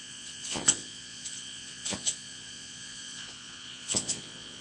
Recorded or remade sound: remade